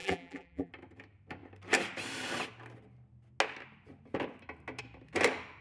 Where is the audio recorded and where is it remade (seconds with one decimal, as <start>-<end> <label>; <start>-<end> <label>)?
0.0-0.7 remade; 0.7-5.6 recorded